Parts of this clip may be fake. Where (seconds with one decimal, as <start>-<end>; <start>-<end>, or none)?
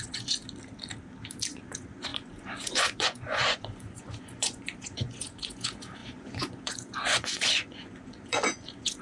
0.0-0.4; 1.5-9.0